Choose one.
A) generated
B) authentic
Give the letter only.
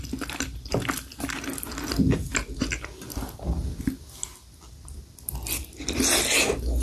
B